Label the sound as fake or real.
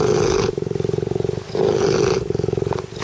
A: real